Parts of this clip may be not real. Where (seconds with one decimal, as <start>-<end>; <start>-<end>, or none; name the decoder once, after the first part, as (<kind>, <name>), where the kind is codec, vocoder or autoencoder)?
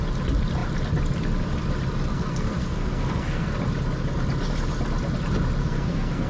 2.1-3.6 (codec, SNAC); 5.6-6.3